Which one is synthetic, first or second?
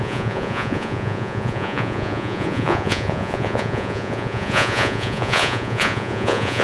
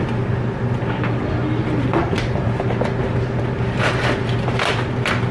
first